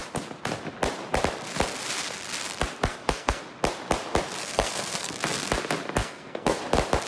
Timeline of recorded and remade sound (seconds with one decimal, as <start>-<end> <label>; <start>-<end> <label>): 0.0-2.9 recorded; 2.9-3.4 remade; 3.4-4.4 recorded; 4.4-5.1 remade; 5.1-6.0 recorded; 6.0-6.6 remade; 6.6-7.1 recorded